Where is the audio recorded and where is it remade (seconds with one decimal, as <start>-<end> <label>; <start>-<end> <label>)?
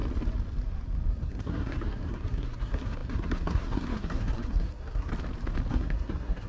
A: 0.0-1.1 recorded; 1.1-5.1 remade; 5.1-5.7 recorded; 5.7-6.5 remade